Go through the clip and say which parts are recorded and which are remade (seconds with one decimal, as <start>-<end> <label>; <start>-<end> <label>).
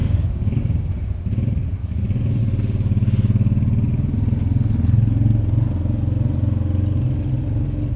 0.0-0.7 remade; 0.7-1.8 recorded; 1.8-2.4 remade; 2.4-8.0 recorded